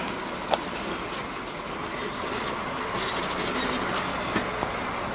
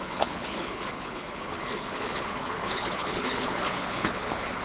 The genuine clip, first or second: first